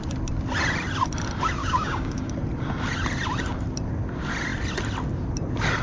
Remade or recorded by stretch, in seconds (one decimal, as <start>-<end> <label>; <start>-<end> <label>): 0.0-1.6 recorded; 1.6-2.3 remade; 2.3-5.8 recorded